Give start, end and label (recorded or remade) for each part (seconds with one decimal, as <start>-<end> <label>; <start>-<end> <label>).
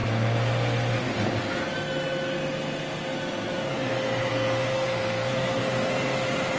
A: 0.0-4.3 recorded; 4.3-5.6 remade; 5.6-6.6 recorded